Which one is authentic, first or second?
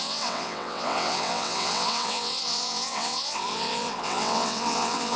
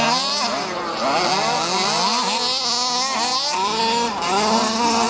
second